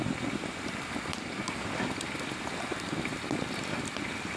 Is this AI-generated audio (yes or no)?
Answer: no